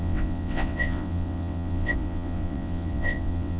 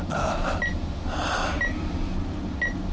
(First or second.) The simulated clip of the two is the first